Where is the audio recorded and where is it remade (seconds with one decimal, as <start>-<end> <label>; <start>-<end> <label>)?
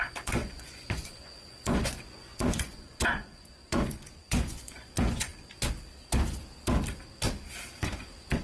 0.0-5.3 remade; 5.3-7.8 recorded; 7.8-8.4 remade